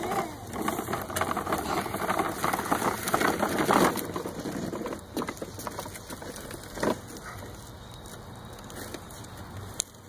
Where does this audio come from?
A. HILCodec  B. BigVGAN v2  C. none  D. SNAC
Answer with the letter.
C